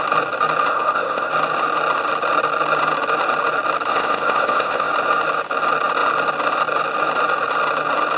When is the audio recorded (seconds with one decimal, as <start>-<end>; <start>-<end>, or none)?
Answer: 0.0-0.7; 1.3-3.9; 4.9-8.2